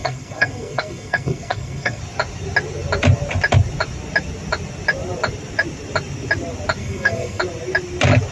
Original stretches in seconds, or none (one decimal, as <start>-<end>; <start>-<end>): 2.0-6.8; 7.4-8.3

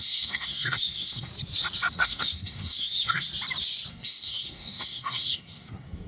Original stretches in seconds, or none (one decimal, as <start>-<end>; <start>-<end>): 1.3-1.9; 3.3-3.9

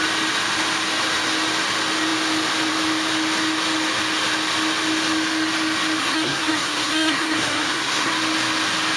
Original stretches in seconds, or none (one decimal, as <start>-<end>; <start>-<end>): 0.0-6.0; 8.1-9.0

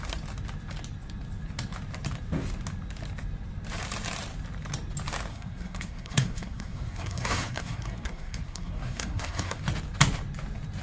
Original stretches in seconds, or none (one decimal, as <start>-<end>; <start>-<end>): 0.0-5.3; 9.6-10.8

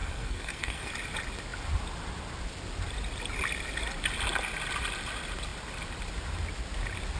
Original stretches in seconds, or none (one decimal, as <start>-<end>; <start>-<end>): 0.9-7.2

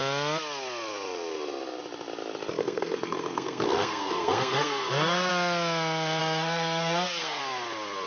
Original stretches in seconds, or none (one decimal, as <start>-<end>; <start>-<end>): 0.0-2.6; 5.3-6.2; 7.4-8.1

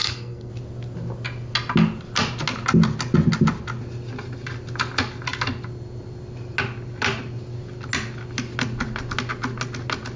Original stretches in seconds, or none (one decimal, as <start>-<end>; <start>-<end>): 0.5-10.2